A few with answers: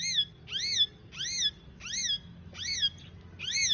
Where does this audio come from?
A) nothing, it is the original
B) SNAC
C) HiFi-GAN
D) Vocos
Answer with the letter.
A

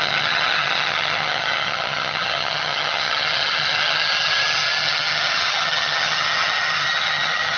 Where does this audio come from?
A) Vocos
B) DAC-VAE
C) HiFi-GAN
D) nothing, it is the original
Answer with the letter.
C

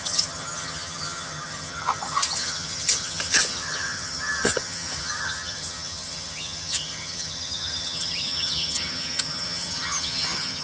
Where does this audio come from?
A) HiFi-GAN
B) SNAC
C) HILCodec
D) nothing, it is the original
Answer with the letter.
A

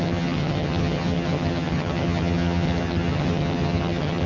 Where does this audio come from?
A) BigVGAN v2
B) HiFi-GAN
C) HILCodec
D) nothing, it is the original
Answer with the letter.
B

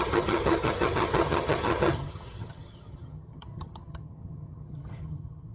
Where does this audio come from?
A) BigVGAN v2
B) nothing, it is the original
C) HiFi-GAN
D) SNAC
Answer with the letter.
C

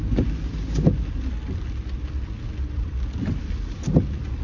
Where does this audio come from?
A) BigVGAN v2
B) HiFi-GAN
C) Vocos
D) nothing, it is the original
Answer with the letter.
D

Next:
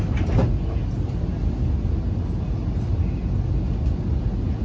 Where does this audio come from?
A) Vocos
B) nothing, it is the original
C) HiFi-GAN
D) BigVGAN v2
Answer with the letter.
B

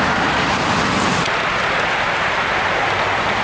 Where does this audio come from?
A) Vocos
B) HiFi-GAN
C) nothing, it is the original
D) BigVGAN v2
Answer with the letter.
C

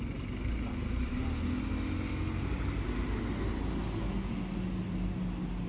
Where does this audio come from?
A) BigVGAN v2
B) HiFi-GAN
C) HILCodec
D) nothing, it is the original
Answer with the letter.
D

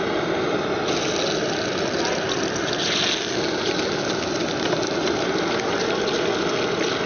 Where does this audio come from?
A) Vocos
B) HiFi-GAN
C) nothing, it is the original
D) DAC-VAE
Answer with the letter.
C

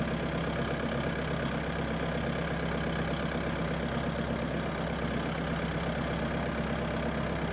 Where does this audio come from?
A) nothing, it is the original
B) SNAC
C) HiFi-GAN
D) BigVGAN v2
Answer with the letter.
A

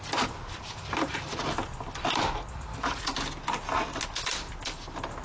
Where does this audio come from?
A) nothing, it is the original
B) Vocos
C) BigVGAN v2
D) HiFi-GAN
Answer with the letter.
A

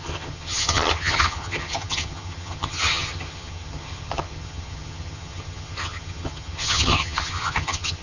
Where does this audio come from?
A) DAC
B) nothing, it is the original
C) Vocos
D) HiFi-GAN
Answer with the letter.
D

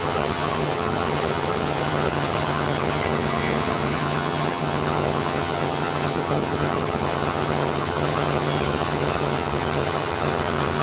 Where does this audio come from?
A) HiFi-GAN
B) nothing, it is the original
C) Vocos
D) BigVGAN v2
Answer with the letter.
A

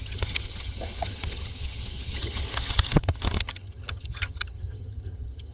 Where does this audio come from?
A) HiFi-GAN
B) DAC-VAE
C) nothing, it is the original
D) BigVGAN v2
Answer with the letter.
A